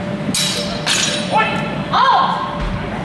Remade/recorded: recorded